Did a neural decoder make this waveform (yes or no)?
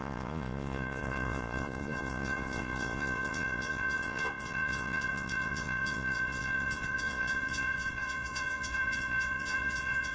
yes